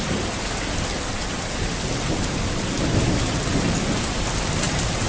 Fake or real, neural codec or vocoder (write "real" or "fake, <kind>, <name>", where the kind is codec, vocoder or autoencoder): real